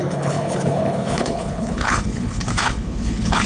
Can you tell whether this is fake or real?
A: fake